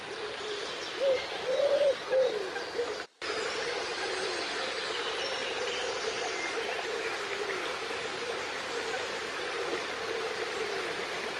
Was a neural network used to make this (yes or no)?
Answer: yes